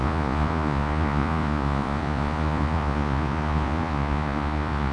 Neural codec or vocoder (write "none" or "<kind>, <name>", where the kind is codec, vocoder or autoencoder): vocoder, Vocos